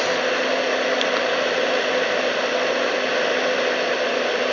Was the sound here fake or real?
real